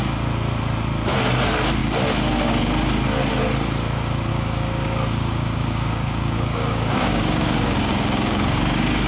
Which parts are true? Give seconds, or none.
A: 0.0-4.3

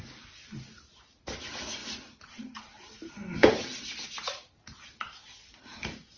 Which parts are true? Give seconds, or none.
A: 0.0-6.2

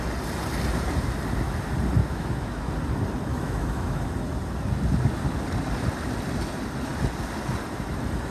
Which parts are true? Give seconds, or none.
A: 0.0-2.0; 2.7-3.3; 4.0-8.3

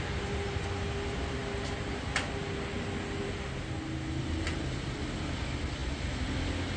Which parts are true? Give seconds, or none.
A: 0.0-6.8